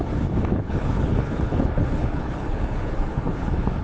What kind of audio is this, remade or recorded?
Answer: remade